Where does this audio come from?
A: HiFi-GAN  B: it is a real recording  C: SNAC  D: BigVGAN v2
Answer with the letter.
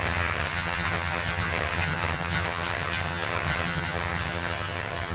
A